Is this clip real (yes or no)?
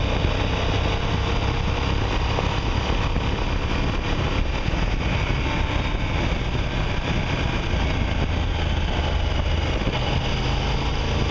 yes